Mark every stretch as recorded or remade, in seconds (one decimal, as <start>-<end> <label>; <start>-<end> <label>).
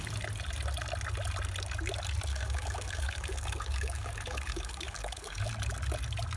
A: 0.0-2.3 recorded; 2.3-5.5 remade; 5.5-6.4 recorded